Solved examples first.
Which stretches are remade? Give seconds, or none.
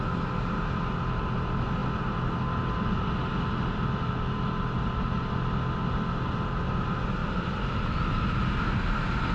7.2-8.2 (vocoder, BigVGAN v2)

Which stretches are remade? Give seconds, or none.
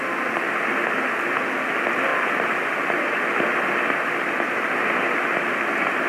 none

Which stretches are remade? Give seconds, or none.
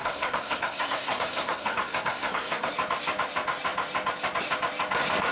0.0-2.7 (codec, SNAC)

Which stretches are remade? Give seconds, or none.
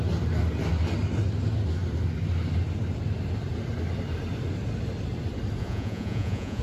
5.6-6.6 (vocoder, Vocos)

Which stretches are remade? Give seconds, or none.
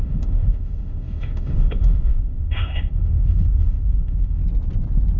0.0-4.4 (autoencoder, DAC-VAE)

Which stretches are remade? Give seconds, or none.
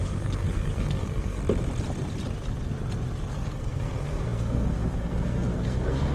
0.0-1.4 (codec, SNAC); 3.3-6.1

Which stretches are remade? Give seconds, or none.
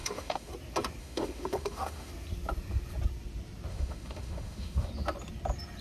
0.0-0.5 (autoencoder, DAC-VAE); 1.0-2.1; 3.7-4.9